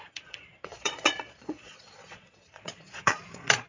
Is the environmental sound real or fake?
fake